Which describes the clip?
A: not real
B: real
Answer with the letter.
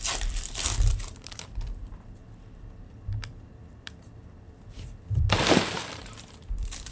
A